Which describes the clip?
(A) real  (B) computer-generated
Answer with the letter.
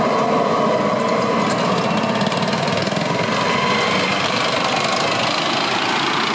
A